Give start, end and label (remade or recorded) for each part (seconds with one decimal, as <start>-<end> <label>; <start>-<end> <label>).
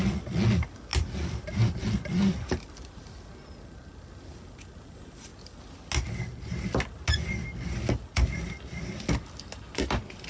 0.0-10.3 recorded